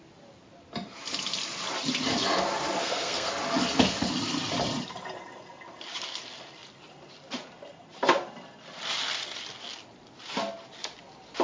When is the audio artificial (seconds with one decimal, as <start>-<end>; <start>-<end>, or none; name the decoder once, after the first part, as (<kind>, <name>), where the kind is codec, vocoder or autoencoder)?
2.8-3.3 (codec, SNAC)